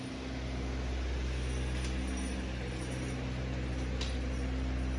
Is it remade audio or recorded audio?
recorded